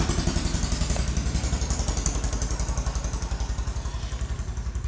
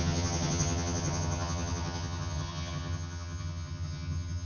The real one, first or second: first